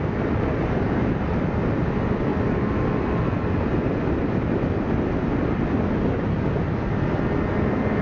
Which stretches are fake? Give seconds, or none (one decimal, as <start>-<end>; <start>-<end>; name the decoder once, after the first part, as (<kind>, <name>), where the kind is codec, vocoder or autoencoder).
none